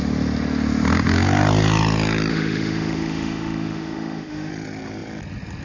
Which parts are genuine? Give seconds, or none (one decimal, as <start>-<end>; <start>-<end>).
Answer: 0.0-2.3; 4.5-5.6